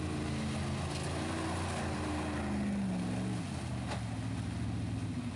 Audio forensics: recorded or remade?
recorded